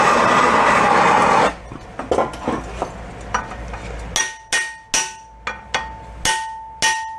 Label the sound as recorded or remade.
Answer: recorded